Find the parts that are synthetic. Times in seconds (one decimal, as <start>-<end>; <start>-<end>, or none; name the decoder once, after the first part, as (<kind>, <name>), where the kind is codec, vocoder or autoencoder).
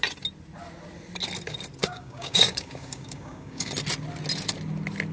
1.8-3.7 (codec, DAC)